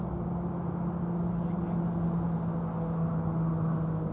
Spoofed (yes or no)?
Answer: no